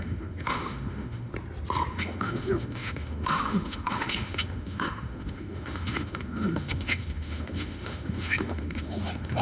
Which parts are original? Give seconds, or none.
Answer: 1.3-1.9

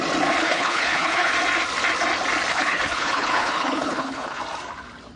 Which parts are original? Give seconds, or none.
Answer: 0.0-0.4; 1.3-2.5; 4.4-5.2

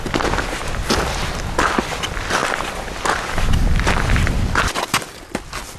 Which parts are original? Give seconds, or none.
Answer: 0.0-5.8